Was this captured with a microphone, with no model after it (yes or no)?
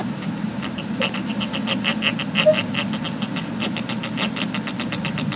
yes